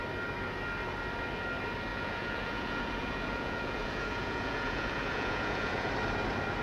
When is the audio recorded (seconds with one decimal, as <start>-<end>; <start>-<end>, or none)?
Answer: 0.0-1.9; 5.9-6.6